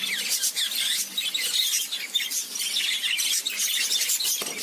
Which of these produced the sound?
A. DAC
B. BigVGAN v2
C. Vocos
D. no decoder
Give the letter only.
D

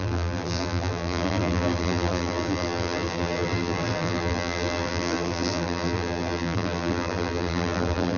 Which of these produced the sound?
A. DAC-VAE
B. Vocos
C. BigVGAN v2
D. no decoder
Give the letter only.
C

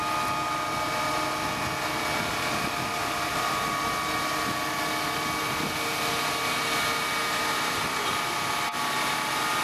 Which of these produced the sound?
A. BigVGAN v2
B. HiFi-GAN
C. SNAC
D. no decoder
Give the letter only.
D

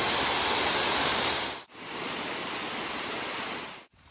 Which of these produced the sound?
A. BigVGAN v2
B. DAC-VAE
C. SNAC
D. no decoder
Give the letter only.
A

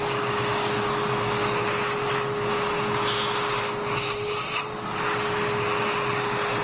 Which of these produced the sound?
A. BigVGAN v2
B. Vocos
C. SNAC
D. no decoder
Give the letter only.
D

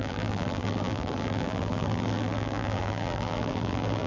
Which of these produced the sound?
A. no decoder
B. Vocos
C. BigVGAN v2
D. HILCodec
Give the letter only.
C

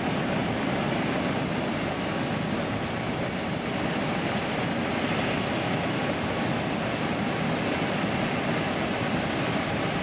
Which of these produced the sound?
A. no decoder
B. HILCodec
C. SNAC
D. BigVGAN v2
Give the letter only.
A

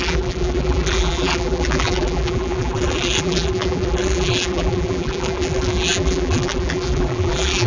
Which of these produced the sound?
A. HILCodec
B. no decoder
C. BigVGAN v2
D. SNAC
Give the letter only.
C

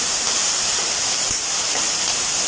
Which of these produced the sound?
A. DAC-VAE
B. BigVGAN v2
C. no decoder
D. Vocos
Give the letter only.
B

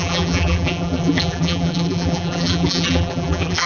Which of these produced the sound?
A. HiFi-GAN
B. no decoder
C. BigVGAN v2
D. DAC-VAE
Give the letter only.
C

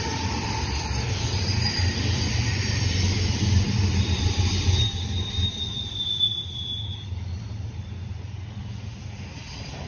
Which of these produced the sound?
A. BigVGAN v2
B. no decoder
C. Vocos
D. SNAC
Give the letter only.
A